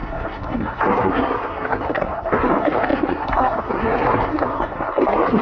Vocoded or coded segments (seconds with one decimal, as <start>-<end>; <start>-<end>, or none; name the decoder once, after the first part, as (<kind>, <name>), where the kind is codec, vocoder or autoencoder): 0.0-5.4 (codec, SNAC)